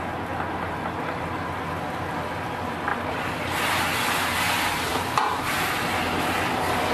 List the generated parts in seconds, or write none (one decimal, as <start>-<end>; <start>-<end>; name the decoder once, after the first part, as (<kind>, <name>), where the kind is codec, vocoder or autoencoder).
4.9-5.7 (vocoder, BigVGAN v2)